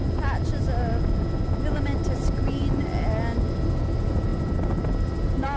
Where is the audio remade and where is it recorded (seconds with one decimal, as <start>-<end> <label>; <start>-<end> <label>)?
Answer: 0.0-5.6 recorded